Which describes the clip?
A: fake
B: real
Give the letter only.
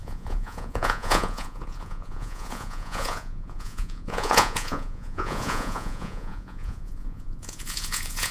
A